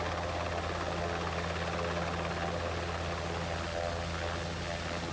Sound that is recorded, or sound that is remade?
recorded